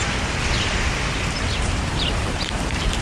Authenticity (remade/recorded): remade